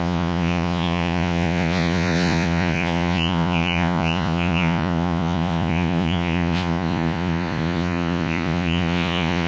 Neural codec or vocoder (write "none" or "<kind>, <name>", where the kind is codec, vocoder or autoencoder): vocoder, Vocos